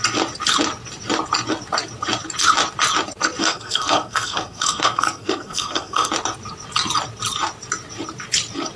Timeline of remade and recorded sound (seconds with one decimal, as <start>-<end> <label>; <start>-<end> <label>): 0.0-3.4 recorded; 3.4-6.1 remade; 6.1-8.8 recorded